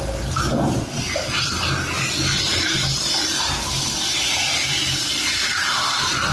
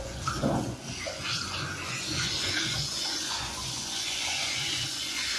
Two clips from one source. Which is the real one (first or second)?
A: first